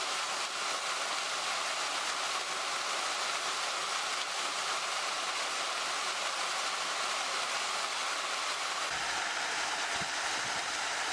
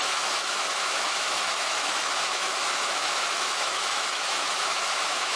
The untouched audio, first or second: first